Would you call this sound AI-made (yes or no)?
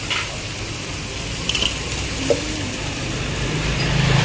no